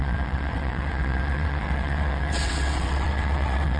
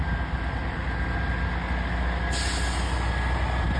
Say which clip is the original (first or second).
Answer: second